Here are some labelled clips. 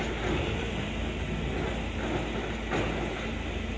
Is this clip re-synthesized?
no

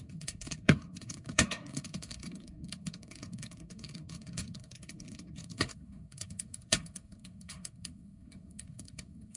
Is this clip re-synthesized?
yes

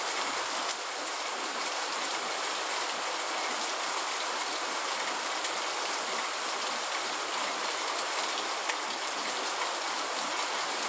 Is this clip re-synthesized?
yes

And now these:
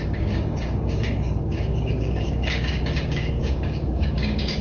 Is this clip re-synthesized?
yes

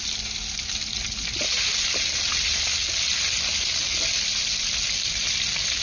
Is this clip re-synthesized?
no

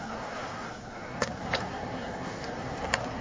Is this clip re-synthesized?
yes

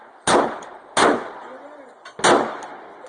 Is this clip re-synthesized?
no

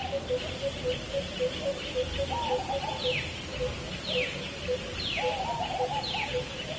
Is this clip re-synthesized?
no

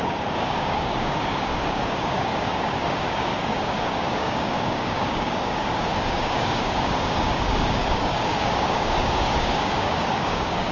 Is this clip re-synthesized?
yes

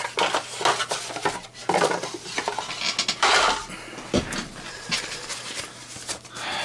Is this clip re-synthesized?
no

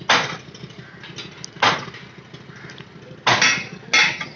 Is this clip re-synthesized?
no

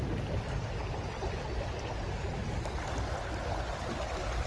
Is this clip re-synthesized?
no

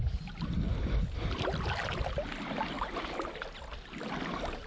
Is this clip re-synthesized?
no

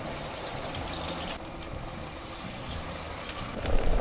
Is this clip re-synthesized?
yes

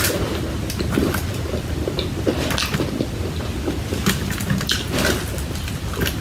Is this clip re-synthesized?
no